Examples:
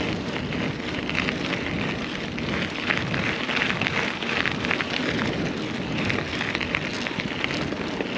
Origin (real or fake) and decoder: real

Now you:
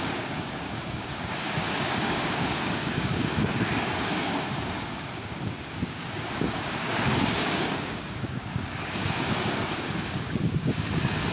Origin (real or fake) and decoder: fake, codec, DAC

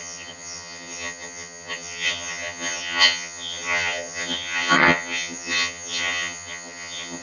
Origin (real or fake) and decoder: fake, vocoder, HiFi-GAN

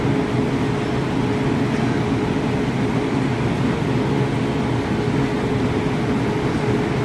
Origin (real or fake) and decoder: real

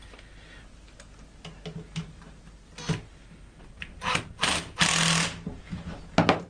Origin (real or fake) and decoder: real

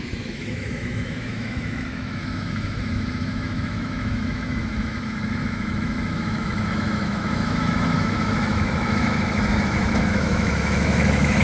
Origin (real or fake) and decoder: fake, autoencoder, DAC-VAE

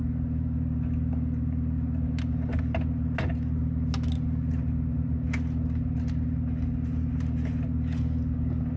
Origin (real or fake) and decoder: real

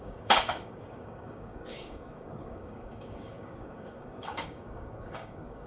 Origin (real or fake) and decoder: fake, codec, DAC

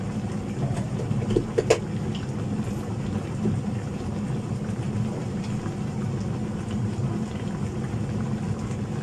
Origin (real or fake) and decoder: real